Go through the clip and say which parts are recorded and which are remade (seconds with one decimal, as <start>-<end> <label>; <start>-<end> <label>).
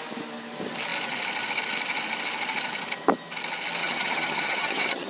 0.0-3.8 recorded; 3.8-5.1 remade